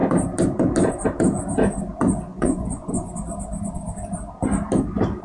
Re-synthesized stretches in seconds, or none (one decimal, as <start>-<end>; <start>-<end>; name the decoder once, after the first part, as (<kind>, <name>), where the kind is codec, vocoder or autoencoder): 2.3-3.1 (vocoder, Vocos)